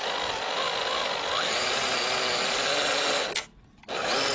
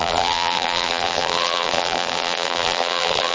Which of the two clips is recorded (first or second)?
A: first